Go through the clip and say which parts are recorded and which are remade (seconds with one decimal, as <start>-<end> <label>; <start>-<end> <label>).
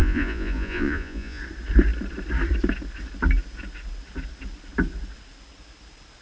0.0-1.4 remade; 1.4-6.2 recorded